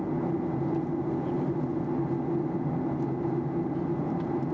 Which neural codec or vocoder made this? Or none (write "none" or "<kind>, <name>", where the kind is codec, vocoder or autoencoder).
none